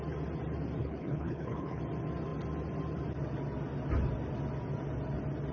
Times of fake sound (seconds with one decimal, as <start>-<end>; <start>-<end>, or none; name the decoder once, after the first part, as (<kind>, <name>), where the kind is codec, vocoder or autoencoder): 0.8-1.8 (codec, HILCodec)